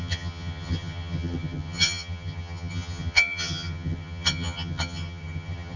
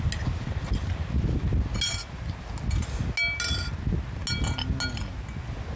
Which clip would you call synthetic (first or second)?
first